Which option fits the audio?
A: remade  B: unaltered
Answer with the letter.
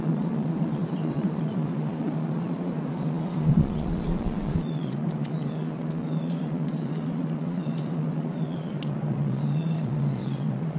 A